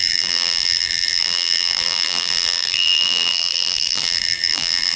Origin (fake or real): fake